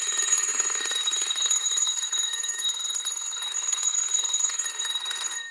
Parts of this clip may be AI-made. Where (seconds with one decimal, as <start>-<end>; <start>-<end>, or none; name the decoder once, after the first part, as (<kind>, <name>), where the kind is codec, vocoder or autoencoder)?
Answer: 0.0-5.5 (codec, SNAC)